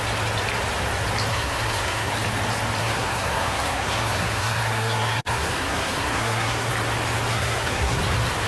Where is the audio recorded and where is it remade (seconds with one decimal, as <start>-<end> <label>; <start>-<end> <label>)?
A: 0.0-1.3 recorded; 1.3-2.1 remade; 2.1-2.8 recorded; 2.8-6.7 remade; 6.7-7.3 recorded; 7.3-8.0 remade; 8.0-8.5 recorded